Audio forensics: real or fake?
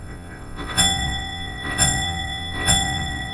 fake